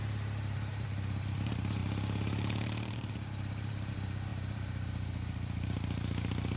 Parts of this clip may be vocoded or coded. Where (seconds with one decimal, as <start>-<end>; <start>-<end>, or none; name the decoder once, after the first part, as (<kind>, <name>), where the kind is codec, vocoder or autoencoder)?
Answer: 0.0-6.6 (vocoder, BigVGAN v2)